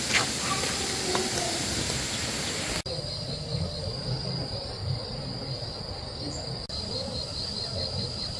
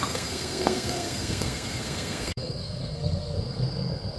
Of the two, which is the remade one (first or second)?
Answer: second